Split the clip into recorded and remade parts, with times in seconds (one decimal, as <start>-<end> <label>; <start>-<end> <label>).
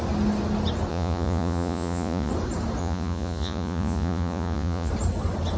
0.0-0.9 recorded; 0.9-2.3 remade; 2.3-2.8 recorded; 2.8-4.9 remade; 4.9-5.6 recorded